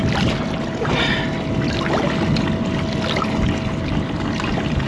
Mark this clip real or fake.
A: real